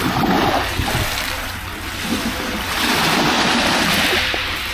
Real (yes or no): yes